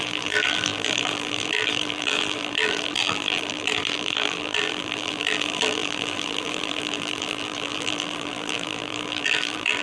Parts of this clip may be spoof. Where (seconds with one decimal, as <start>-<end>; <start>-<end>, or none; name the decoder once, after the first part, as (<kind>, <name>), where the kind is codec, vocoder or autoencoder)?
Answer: 0.0-9.8 (vocoder, BigVGAN v2)